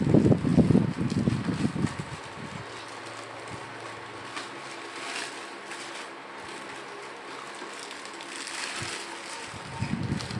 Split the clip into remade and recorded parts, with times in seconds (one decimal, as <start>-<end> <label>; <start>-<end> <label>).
0.0-10.4 recorded